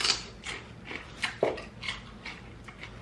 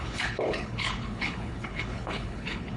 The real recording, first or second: first